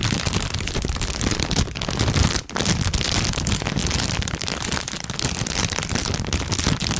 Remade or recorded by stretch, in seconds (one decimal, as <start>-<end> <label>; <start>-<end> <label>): 0.0-0.8 remade; 0.8-3.8 recorded; 3.8-5.9 remade; 5.9-7.0 recorded